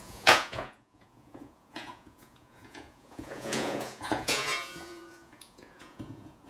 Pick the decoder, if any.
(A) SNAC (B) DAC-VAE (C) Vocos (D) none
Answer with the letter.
C